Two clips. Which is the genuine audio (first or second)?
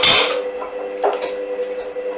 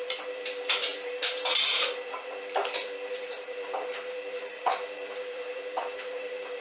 first